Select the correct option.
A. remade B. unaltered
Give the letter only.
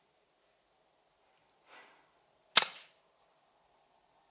B